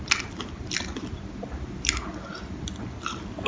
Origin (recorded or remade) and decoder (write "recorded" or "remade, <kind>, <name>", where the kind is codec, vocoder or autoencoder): recorded